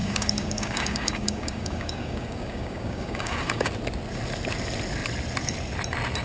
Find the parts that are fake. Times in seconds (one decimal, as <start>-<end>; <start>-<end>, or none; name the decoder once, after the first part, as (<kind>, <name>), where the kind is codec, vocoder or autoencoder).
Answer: 0.0-3.7 (codec, DAC)